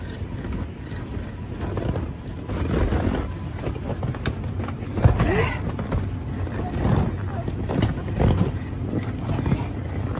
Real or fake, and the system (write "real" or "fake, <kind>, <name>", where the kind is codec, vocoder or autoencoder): real